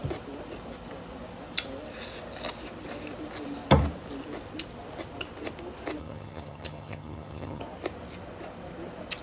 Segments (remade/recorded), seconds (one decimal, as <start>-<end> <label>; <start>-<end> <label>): 0.0-6.0 recorded; 6.0-7.6 remade; 7.6-9.2 recorded